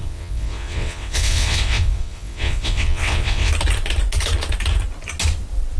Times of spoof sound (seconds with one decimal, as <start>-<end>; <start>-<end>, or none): 0.0-3.5